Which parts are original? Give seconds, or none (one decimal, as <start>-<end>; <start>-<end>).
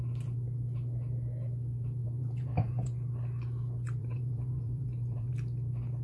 0.0-2.0; 2.9-4.0; 5.3-6.0